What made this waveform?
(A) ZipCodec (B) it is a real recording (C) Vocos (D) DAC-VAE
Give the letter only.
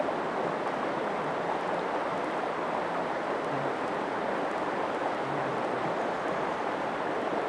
B